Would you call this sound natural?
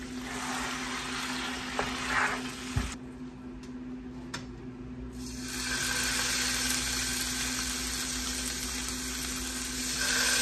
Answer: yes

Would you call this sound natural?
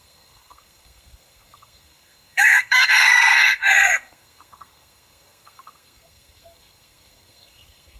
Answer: no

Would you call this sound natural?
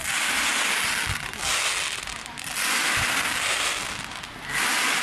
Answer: yes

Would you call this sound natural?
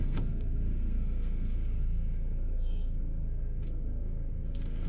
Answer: no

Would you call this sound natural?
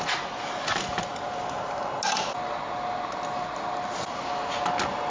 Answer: yes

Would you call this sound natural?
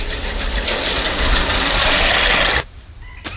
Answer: yes